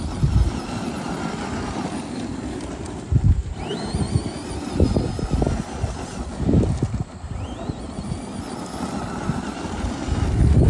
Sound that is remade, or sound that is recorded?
recorded